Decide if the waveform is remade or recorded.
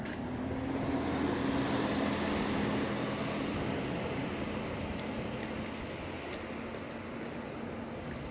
recorded